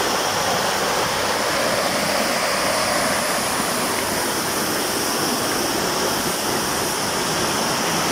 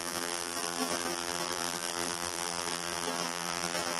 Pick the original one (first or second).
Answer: first